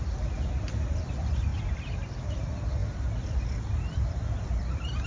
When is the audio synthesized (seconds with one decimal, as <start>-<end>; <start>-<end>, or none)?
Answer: 2.8-5.1